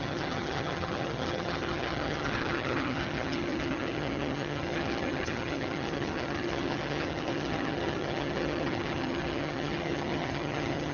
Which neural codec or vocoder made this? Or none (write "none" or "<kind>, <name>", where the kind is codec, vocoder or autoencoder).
vocoder, HiFi-GAN